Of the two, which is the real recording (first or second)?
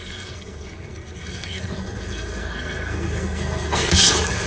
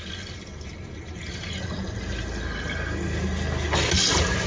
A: second